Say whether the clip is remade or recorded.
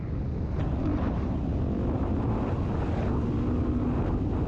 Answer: recorded